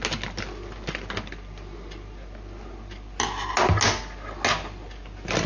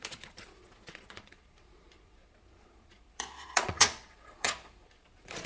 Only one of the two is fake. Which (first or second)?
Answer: second